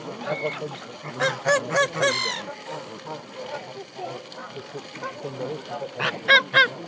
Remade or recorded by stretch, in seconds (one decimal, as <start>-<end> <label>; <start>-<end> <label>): 0.0-4.4 recorded; 4.4-6.4 remade; 6.4-6.9 recorded